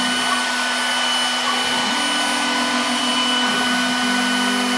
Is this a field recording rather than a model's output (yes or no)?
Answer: yes